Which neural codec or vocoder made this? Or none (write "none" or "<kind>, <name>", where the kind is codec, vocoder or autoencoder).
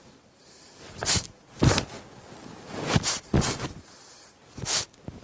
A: none